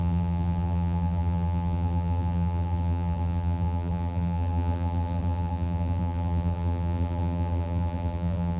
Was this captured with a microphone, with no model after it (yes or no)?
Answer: no